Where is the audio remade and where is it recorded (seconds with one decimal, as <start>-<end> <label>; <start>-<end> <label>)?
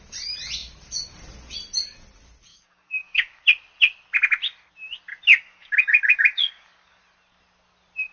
0.0-2.5 recorded; 2.5-3.4 remade; 3.4-5.3 recorded; 5.3-7.0 remade; 7.0-8.1 recorded